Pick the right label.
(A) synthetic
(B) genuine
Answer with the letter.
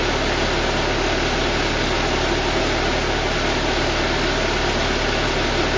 B